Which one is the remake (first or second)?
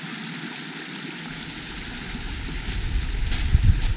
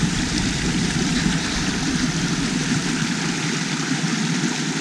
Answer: second